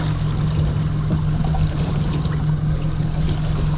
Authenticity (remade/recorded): recorded